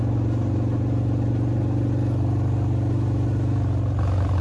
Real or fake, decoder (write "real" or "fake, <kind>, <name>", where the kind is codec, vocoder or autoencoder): real